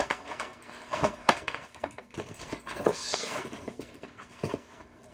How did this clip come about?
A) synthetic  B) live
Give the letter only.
A